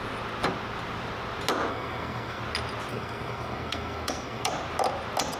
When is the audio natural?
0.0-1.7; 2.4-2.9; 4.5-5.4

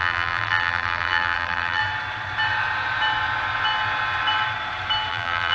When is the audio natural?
1.8-5.1

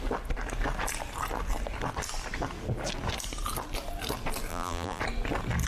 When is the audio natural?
0.0-4.5; 5.0-5.7